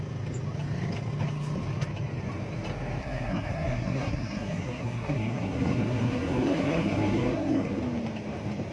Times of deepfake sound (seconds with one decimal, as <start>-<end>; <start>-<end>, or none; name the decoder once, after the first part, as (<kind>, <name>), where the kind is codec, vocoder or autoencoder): 3.0-7.8 (codec, SNAC)